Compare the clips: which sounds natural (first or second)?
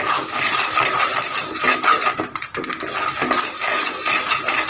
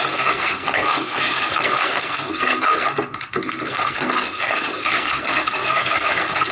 first